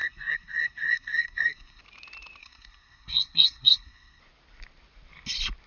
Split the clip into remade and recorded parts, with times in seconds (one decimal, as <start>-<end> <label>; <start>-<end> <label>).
0.0-1.8 remade; 1.8-2.4 recorded; 2.4-4.2 remade; 4.2-5.7 recorded